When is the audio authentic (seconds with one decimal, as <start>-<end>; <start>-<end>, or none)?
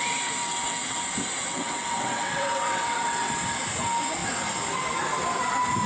0.0-0.4; 1.0-1.5; 3.3-5.9